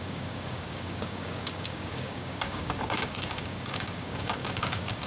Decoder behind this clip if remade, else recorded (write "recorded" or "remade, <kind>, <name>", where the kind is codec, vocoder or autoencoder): remade, codec, DAC